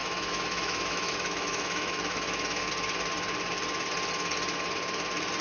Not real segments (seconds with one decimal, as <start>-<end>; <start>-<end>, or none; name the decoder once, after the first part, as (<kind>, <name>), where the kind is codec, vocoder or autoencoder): 0.0-2.7 (autoencoder, DAC-VAE)